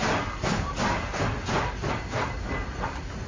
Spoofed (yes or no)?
no